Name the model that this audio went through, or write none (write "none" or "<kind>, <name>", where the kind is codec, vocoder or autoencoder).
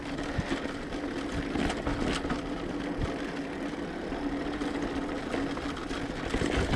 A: none